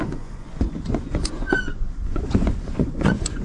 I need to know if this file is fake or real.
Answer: fake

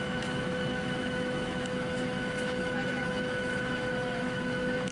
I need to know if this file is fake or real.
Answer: fake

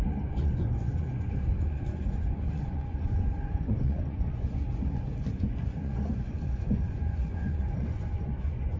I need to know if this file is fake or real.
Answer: fake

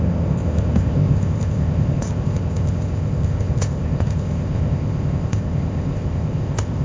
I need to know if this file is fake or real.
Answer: fake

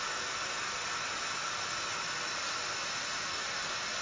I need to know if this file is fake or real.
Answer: real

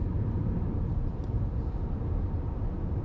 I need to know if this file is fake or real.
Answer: fake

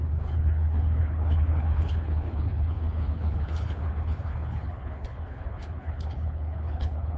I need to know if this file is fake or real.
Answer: fake